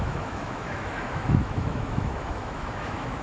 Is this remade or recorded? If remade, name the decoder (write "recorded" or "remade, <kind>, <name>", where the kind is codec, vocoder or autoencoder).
remade, autoencoder, DAC-VAE